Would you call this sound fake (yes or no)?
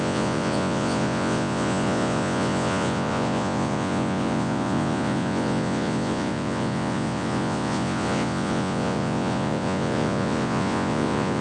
yes